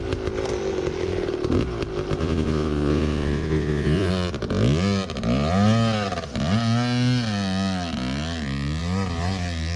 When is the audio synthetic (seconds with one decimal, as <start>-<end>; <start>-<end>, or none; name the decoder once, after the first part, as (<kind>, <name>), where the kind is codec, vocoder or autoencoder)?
2.2-4.1 (vocoder, Vocos)